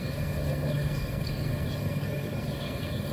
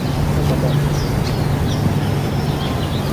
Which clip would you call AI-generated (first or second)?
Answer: first